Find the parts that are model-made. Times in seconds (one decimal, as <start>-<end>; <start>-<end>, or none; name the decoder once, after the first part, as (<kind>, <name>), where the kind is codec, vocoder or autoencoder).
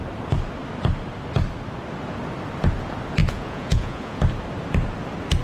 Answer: 3.2-4.2 (vocoder, Vocos)